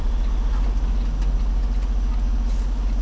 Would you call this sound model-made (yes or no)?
no